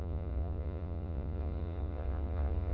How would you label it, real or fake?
fake